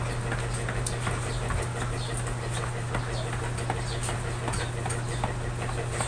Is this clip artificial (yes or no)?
no